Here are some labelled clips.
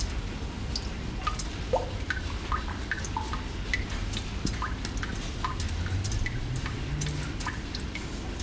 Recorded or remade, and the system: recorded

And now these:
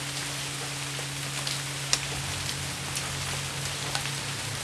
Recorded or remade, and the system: recorded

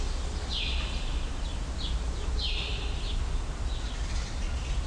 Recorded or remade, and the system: recorded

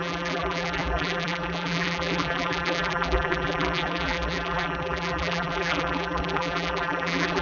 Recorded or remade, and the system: remade, vocoder, BigVGAN v2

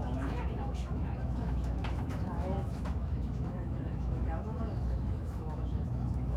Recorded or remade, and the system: remade, autoencoder, DAC-VAE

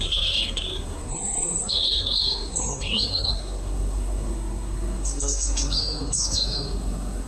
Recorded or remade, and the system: remade, codec, SNAC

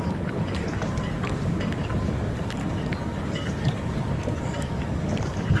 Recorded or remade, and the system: remade, codec, DAC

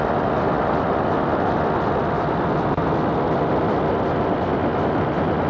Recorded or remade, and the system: recorded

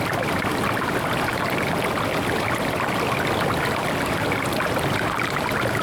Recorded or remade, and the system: recorded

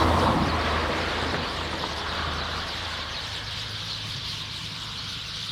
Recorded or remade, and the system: remade, vocoder, BigVGAN v2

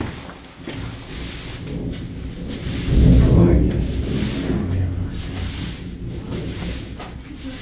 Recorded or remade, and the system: recorded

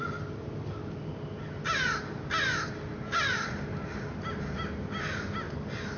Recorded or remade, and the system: recorded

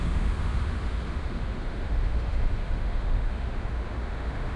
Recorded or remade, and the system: remade, autoencoder, DAC-VAE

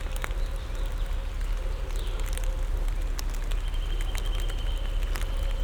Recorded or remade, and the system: recorded